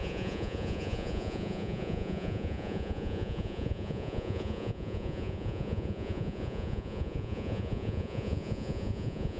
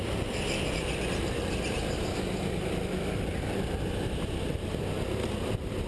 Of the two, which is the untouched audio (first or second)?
second